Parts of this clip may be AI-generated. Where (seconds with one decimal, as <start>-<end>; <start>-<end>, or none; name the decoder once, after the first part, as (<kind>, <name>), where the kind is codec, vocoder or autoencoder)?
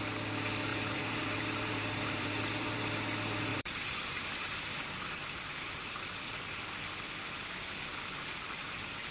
0.7-2.8 (vocoder, BigVGAN v2); 3.5-6.0